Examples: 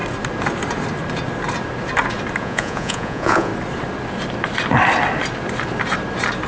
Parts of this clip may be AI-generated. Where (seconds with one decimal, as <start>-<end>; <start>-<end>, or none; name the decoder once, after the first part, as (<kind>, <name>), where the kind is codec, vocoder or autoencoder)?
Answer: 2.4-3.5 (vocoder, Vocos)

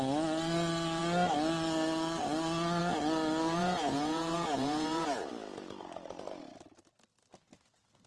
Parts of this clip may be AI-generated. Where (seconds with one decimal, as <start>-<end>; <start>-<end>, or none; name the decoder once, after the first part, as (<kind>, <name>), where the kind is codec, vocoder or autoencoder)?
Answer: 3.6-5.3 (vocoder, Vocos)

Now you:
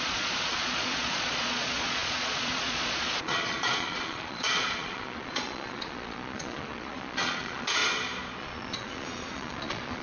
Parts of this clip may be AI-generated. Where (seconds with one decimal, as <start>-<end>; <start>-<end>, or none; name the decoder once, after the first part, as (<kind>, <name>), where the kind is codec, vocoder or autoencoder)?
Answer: 0.0-7.8 (vocoder, Vocos); 8.4-10.0

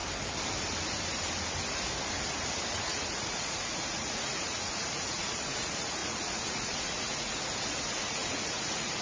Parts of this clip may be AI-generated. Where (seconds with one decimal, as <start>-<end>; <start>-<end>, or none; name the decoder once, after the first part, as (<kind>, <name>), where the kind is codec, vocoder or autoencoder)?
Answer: 2.7-9.0 (vocoder, Vocos)

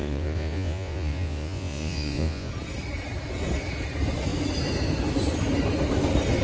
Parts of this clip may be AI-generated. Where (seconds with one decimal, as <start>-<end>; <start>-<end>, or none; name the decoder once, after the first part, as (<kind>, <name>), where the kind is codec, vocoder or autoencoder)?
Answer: 0.0-2.5 (vocoder, Vocos)

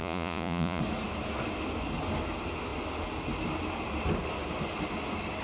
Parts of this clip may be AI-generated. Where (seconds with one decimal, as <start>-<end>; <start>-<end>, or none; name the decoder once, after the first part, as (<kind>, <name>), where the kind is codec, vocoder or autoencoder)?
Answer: 0.0-0.8 (vocoder, Vocos)